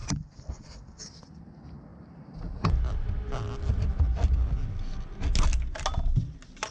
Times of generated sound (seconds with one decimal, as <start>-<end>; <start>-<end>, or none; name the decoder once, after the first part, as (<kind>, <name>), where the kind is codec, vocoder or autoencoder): none